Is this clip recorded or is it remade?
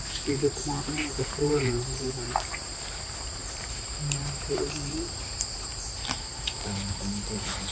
remade